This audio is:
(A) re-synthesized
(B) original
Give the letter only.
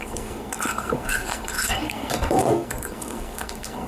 A